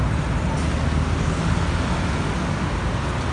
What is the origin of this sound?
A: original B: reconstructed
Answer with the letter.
A